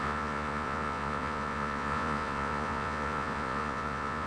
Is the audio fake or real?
fake